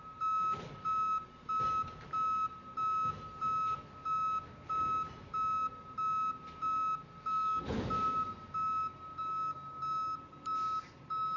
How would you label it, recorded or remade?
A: recorded